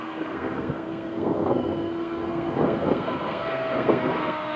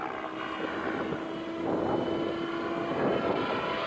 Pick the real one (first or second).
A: second